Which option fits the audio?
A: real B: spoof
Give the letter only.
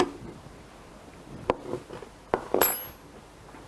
A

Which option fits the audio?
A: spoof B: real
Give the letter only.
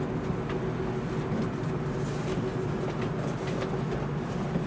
B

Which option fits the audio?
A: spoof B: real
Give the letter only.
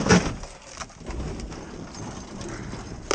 B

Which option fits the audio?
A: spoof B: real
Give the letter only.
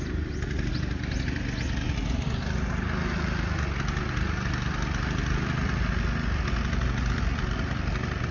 B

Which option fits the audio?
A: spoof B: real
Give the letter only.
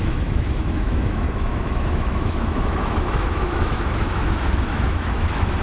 A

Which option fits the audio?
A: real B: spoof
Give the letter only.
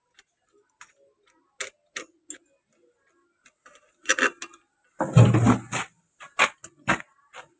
A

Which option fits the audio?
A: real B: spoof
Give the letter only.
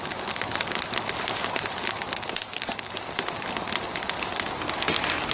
A